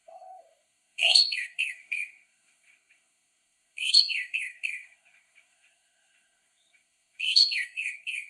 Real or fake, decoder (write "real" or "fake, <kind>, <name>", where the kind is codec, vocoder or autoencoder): fake, codec, SNAC